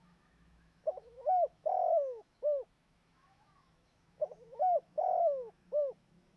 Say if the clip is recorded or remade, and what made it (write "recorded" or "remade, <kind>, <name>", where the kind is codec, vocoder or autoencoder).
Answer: remade, autoencoder, DAC-VAE